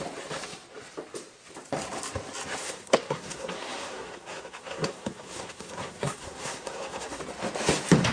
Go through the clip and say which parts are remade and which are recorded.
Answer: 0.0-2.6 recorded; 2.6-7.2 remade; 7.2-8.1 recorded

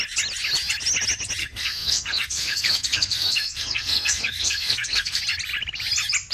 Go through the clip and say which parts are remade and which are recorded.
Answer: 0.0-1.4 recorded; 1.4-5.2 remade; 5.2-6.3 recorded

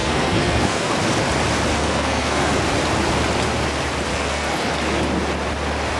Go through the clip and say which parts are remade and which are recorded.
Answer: 0.0-0.9 remade; 0.9-1.7 recorded; 1.7-2.6 remade; 2.6-4.1 recorded; 4.1-4.7 remade; 4.7-6.0 recorded